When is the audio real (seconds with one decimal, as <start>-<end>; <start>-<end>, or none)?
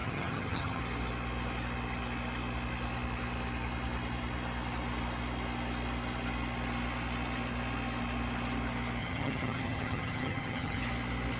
0.8-9.0; 10.8-11.4